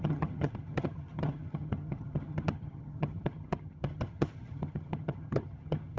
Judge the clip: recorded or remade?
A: remade